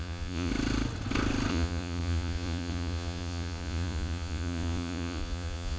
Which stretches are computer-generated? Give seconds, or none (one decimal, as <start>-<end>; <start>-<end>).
0.0-0.5; 1.5-5.8